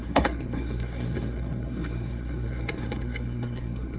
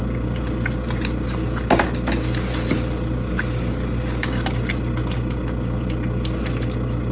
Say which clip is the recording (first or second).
second